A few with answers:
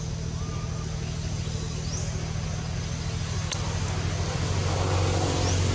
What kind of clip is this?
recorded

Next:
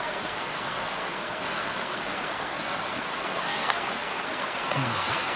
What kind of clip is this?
remade